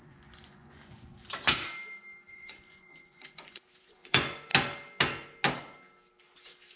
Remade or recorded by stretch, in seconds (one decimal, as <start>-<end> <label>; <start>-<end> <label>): 0.0-1.1 remade; 1.1-2.3 recorded; 2.3-4.5 remade; 4.5-6.8 recorded